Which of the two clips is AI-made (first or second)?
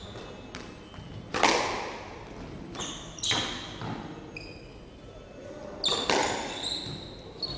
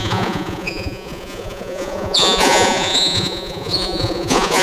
second